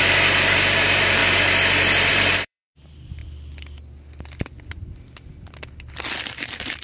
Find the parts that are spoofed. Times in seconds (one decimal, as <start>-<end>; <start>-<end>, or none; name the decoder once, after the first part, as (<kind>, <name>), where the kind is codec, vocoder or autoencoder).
0.0-1.2 (vocoder, BigVGAN v2); 2.1-3.2; 6.2-6.8